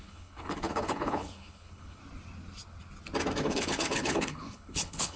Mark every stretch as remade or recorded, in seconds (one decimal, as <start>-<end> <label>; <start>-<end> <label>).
0.0-2.0 remade; 2.0-3.4 recorded; 3.4-5.2 remade